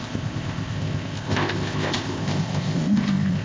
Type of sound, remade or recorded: remade